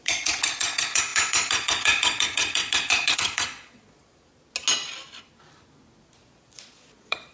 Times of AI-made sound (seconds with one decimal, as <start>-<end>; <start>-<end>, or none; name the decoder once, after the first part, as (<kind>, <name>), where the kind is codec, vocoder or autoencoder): 0.0-4.3 (vocoder, Vocos); 6.2-7.3